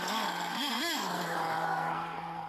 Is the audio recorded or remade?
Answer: remade